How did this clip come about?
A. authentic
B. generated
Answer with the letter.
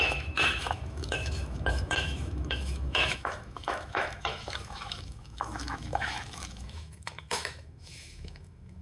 B